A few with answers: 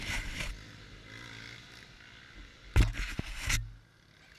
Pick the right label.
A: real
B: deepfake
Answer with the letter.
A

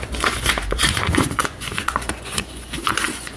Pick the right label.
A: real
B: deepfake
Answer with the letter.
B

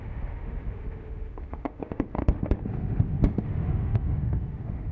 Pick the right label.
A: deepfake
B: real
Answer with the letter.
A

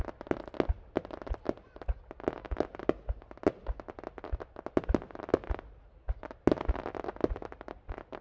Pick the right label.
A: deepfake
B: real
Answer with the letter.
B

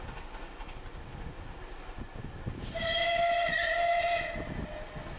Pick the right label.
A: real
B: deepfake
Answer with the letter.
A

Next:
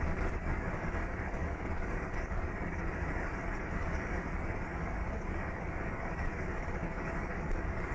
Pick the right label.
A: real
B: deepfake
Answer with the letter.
B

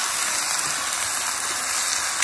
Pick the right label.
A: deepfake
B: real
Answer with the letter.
B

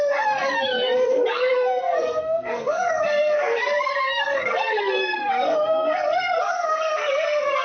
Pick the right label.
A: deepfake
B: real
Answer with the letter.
A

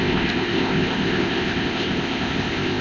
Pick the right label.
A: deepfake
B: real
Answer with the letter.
A